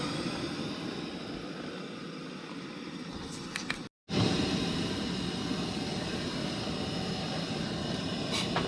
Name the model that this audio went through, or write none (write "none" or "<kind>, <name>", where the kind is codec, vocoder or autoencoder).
none